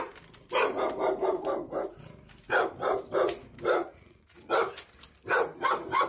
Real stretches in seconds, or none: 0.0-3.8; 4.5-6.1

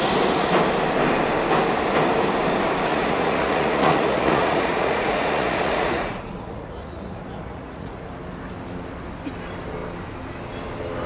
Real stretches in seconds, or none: 0.0-2.9; 8.1-11.1

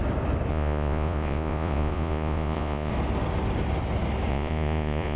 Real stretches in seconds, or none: 0.0-0.5; 2.9-4.3

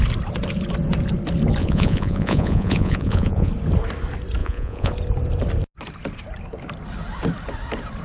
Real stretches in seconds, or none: 0.0-1.6; 3.5-4.4; 4.9-8.0

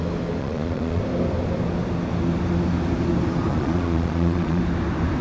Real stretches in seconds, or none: 0.0-0.4; 1.0-3.5; 4.6-5.2

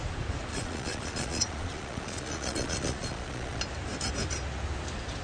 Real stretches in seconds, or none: 0.0-0.5; 3.6-5.2

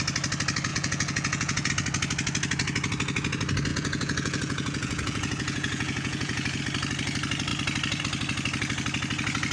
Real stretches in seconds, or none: 0.0-0.7; 1.7-3.7; 6.6-9.5

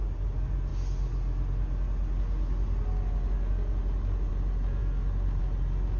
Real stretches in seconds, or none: 0.0-6.0